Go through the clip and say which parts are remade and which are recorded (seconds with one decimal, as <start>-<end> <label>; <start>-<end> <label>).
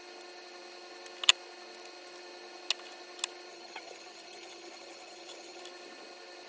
0.0-3.5 recorded; 3.5-5.6 remade; 5.6-6.5 recorded